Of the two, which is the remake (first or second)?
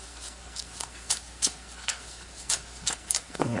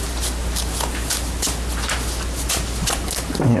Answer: first